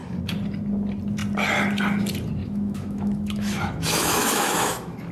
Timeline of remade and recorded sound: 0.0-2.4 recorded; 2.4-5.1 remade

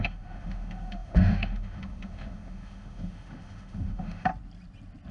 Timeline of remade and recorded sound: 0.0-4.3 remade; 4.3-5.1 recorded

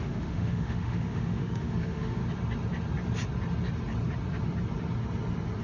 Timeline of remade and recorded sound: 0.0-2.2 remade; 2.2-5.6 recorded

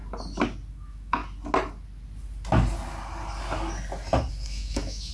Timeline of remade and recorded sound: 0.0-0.7 recorded; 0.7-1.2 remade; 1.2-4.3 recorded; 4.3-5.1 remade